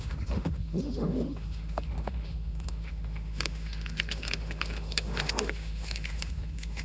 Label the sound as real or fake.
fake